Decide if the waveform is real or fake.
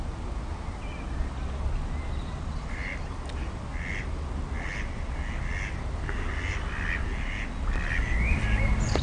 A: real